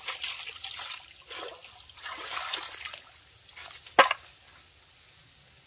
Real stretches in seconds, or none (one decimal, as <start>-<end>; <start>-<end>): 0.0-5.7